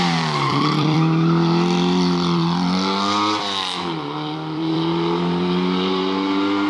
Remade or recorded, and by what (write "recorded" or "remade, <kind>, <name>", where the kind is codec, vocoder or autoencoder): remade, vocoder, BigVGAN v2